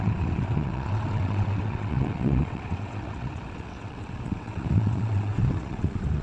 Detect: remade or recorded remade